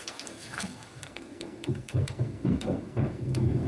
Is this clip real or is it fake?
fake